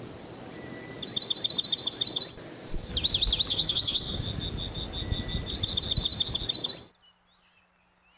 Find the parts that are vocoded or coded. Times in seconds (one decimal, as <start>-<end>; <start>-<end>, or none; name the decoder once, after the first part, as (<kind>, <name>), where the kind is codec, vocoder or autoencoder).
3.5-4.2 (codec, SNAC)